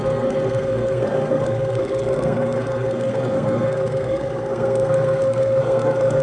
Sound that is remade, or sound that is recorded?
remade